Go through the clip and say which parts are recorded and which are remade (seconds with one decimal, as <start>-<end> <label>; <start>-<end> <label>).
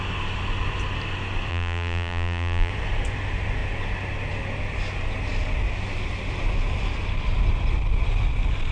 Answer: 0.0-1.5 recorded; 1.5-2.7 remade; 2.7-8.7 recorded